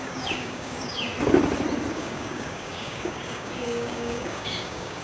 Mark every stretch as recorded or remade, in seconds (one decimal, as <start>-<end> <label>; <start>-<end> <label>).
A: 0.0-1.1 remade; 1.1-1.9 recorded; 1.9-5.0 remade